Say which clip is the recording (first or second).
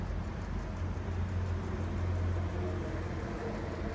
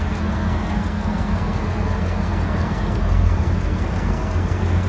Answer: first